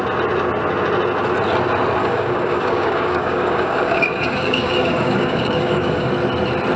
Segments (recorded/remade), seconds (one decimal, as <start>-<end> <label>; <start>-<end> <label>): 0.0-2.0 recorded; 2.0-6.1 remade; 6.1-6.8 recorded